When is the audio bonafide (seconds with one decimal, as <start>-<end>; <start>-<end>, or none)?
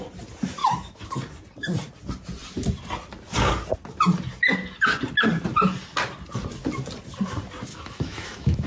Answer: 0.0-0.6; 1.1-7.7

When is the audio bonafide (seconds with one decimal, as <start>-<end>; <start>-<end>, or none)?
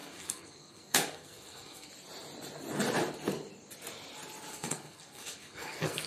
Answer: 1.9-4.5